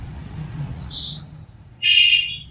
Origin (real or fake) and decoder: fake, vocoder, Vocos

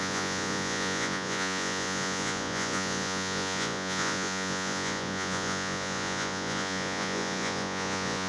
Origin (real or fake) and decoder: fake, vocoder, Vocos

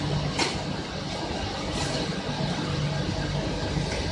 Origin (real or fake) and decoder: real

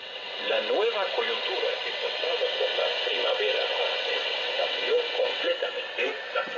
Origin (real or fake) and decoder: fake, vocoder, WaveNeXt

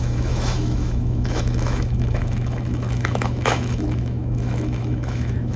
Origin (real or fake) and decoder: fake, autoencoder, DAC-VAE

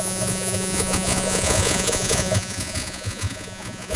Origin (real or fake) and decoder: fake, vocoder, Vocos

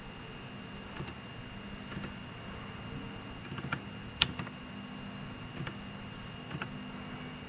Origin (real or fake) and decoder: real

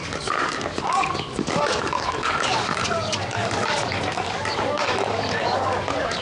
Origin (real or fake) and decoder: fake, codec, DAC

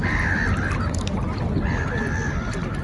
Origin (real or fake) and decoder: real